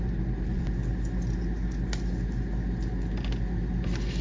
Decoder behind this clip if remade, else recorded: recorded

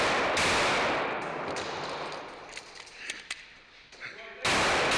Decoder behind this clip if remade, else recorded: recorded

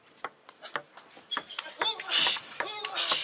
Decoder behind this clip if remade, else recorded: recorded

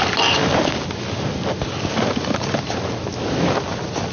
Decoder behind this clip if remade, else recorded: recorded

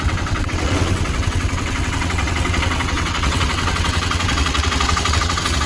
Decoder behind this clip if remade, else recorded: remade, vocoder, WaveNeXt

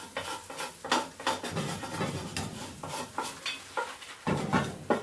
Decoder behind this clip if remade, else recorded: recorded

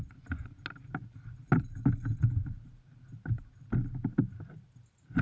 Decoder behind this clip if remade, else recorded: recorded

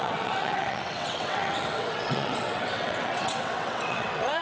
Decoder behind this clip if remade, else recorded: remade, vocoder, WaveNeXt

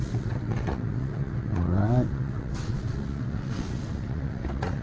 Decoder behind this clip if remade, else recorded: remade, vocoder, WaveNeXt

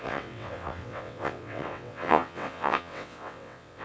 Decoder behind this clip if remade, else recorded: remade, vocoder, WaveNeXt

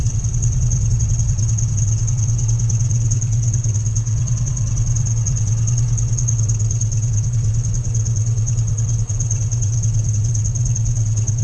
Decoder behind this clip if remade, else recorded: remade, vocoder, WaveNeXt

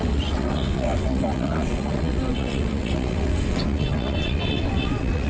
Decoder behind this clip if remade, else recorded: remade, vocoder, WaveNeXt